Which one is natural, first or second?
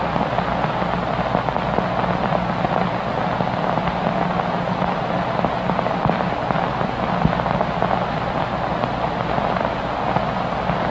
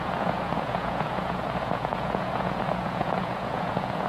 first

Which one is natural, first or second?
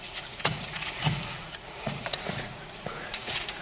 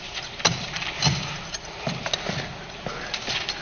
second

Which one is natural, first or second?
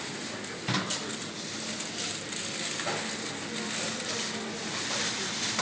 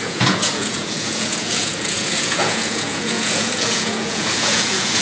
first